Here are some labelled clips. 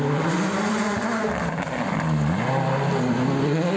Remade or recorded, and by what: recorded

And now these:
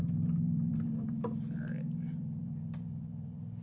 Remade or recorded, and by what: remade, vocoder, BigVGAN v2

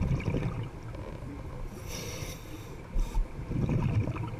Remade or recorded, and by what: recorded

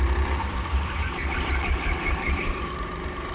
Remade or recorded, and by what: remade, vocoder, BigVGAN v2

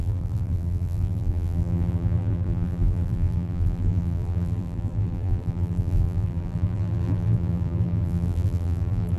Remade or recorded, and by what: remade, vocoder, BigVGAN v2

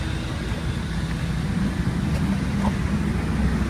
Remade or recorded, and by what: recorded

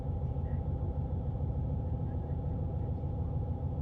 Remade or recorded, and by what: remade, vocoder, BigVGAN v2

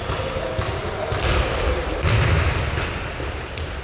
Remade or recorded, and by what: recorded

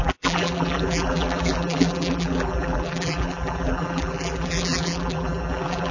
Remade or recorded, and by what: remade, vocoder, BigVGAN v2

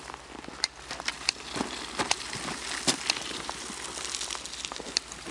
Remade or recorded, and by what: remade, vocoder, BigVGAN v2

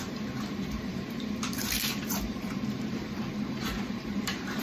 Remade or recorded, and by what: remade, vocoder, BigVGAN v2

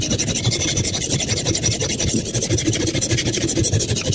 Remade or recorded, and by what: recorded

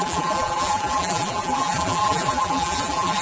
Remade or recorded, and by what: remade, vocoder, BigVGAN v2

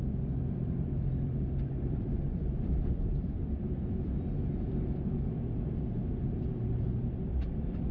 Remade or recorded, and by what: remade, vocoder, BigVGAN v2